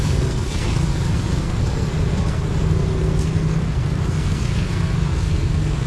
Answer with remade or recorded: remade